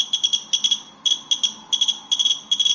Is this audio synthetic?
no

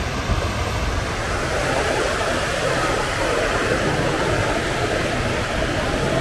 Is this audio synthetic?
no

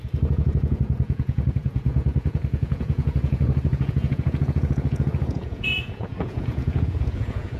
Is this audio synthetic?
yes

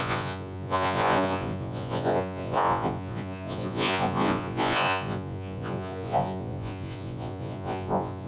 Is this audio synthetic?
yes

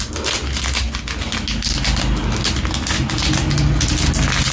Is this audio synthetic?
no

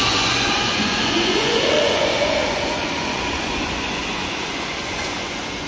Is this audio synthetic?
yes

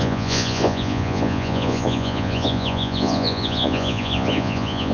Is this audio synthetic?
yes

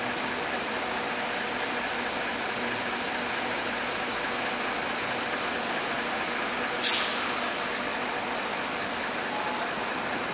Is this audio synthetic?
no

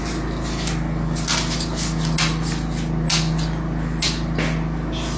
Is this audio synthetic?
no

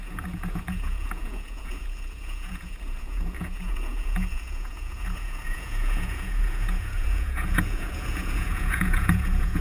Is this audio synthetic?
yes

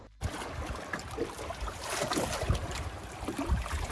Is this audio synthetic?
no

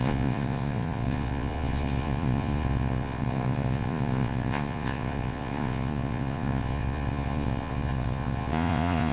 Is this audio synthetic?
yes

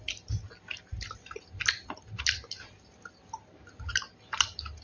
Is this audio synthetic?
no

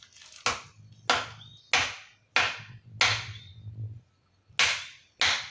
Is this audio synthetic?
no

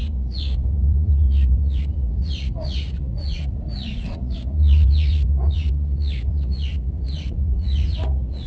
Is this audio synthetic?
yes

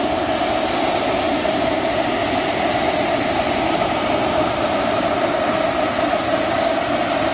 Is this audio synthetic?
no